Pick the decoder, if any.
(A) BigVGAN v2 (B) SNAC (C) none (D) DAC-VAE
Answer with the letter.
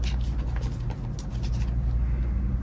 C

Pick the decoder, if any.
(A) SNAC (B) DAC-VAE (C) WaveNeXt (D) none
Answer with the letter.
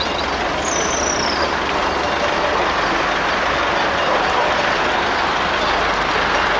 D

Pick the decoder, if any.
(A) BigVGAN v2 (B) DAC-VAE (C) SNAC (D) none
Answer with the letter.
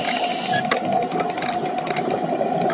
D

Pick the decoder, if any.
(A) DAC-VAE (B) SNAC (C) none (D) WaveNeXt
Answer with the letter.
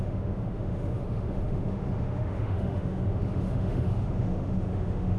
A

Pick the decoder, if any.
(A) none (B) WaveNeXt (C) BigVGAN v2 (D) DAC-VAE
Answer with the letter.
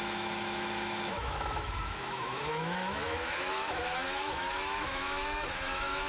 D